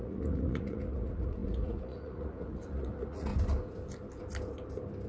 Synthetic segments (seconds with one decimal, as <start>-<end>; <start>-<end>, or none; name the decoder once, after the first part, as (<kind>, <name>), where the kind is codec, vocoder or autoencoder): 0.0-3.3 (vocoder, Vocos)